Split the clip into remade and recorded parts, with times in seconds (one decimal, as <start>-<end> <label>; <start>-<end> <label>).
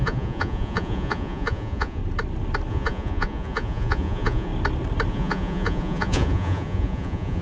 0.0-2.0 remade; 2.0-2.7 recorded; 2.7-4.5 remade; 4.5-5.1 recorded; 5.1-7.4 remade